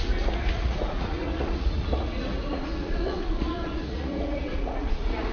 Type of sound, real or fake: fake